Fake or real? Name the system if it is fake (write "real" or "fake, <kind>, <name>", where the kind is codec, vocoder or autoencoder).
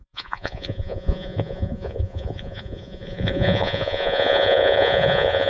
fake, vocoder, Vocos